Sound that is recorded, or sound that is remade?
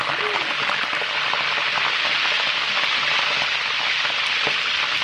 recorded